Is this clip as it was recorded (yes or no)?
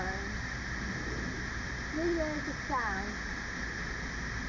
yes